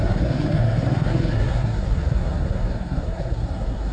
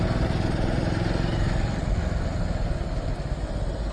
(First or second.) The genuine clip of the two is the second